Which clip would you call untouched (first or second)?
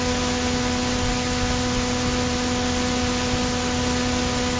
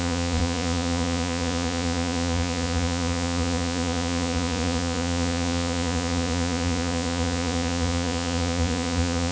first